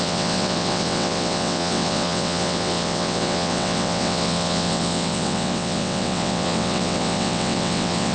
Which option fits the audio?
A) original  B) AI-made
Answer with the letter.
B